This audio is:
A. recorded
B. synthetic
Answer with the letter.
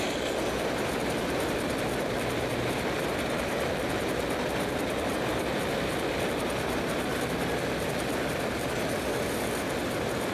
B